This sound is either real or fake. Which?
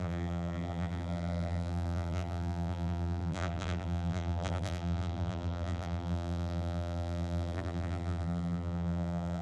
fake